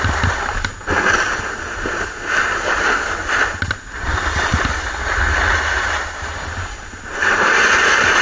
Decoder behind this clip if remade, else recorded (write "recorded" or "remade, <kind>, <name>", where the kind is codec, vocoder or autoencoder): recorded